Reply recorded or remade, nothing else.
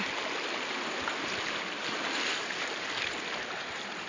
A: recorded